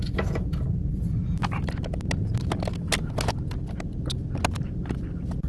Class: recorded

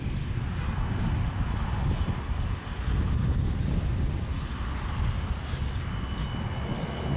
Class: recorded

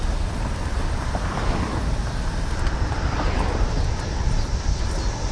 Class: recorded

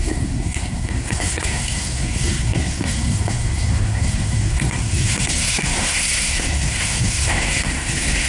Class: remade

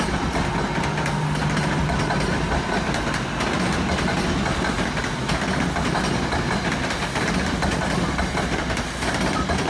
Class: recorded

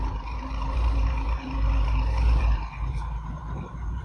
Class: remade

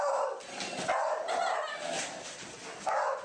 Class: recorded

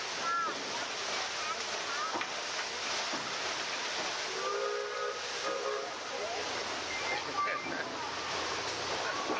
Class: recorded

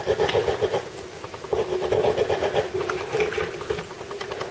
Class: recorded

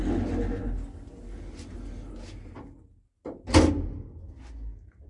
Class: recorded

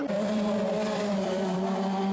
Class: remade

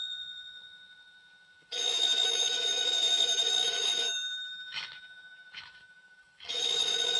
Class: remade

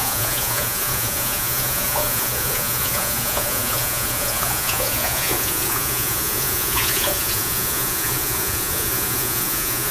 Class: remade